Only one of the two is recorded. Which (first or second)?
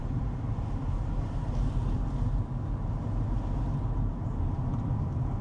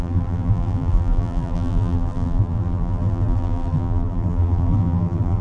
first